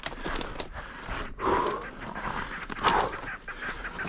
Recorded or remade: recorded